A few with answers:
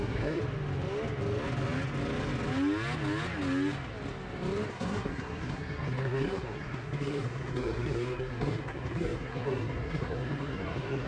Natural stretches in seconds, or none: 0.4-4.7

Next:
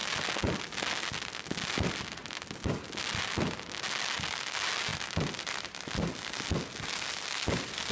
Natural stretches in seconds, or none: 0.0-7.9

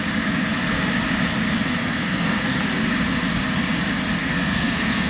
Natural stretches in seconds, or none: 0.0-1.8; 2.6-4.2

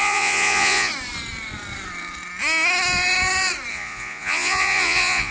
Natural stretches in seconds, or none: 0.9-3.7

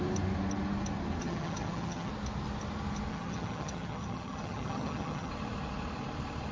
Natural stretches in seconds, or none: 0.0-1.2; 2.1-3.1; 5.3-6.5

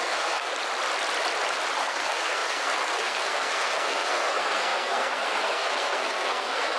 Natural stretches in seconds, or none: 0.5-1.8

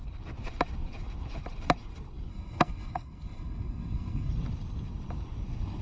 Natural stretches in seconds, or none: 0.0-2.3; 4.3-5.8